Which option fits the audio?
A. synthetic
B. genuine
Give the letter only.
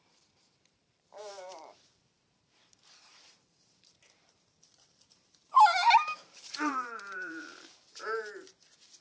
A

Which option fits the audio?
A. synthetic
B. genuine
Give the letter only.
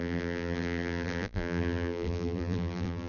A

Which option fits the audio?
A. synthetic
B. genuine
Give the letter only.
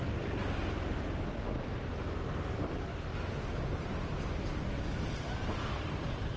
A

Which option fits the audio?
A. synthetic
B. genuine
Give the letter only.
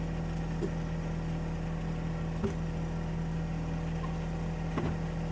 B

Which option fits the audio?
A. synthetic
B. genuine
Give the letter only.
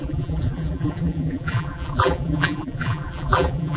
A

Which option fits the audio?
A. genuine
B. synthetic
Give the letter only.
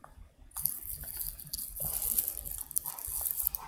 A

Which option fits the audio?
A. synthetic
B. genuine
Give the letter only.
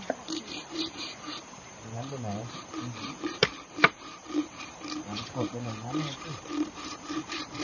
A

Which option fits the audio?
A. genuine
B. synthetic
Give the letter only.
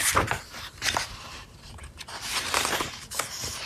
B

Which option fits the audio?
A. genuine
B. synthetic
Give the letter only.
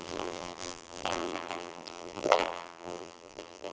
B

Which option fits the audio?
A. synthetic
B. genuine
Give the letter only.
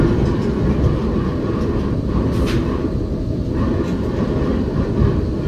B